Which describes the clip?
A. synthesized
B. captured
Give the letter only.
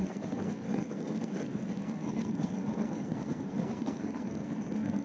A